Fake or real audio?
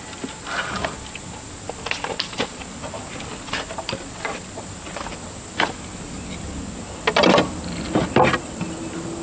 real